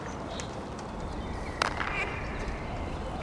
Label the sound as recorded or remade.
recorded